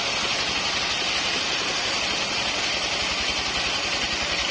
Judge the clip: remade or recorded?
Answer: recorded